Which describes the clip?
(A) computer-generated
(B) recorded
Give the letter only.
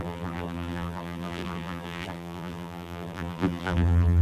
A